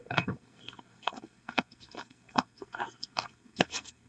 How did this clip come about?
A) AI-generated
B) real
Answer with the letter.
A